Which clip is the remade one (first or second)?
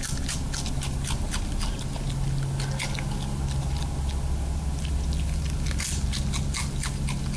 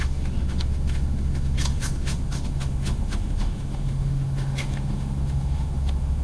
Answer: second